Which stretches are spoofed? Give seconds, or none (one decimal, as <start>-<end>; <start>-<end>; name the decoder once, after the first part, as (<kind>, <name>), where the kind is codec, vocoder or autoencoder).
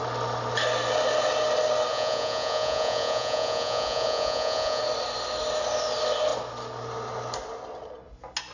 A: 1.9-4.8 (vocoder, Vocos)